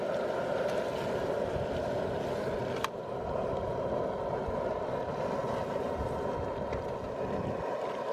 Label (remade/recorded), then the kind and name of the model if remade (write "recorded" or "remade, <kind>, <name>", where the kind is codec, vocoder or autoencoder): recorded